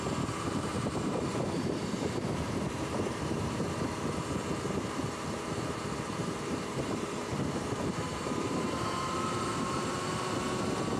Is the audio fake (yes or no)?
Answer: yes